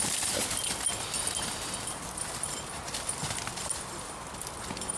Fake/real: real